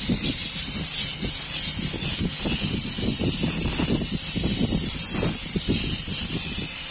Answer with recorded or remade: recorded